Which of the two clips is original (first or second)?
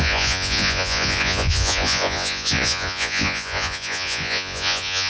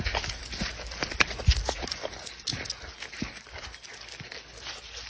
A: second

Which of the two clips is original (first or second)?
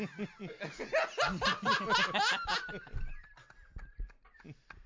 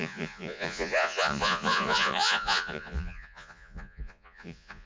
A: first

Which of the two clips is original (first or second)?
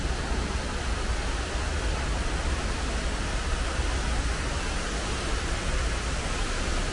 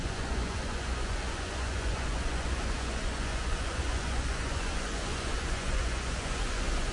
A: first